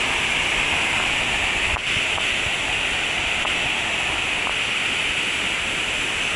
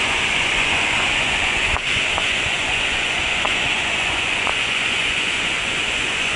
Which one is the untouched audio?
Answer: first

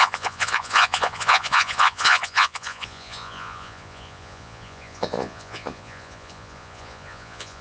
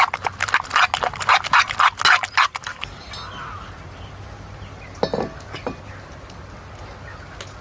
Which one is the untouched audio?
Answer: second